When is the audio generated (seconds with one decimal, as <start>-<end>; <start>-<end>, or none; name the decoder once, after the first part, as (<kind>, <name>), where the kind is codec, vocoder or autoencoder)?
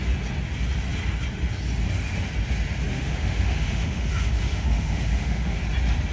2.9-5.6 (autoencoder, DAC-VAE)